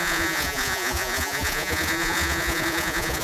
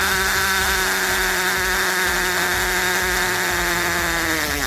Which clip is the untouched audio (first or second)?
second